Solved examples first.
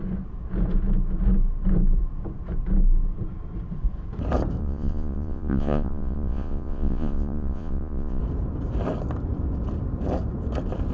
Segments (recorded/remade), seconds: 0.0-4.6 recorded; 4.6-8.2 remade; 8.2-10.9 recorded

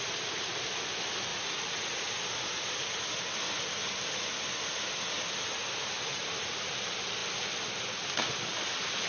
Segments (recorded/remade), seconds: 0.0-1.3 recorded; 1.3-2.2 remade; 2.2-9.1 recorded

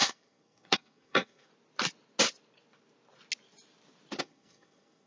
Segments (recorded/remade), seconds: 0.0-1.5 remade; 1.5-4.2 recorded; 4.2-5.1 remade

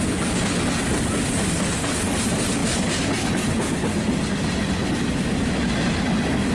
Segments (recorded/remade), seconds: 0.0-6.5 recorded

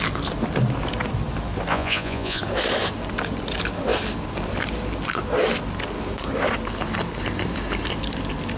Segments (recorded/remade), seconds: 0.0-1.7 recorded; 1.7-2.4 remade; 2.4-8.6 recorded

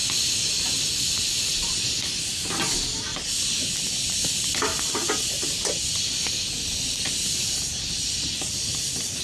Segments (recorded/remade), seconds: 0.0-0.5 recorded; 0.5-3.1 remade; 3.1-3.8 recorded; 3.8-4.7 remade; 4.7-7.8 recorded; 7.8-9.2 remade

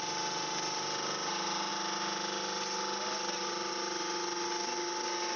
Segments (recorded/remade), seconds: 0.0-5.4 recorded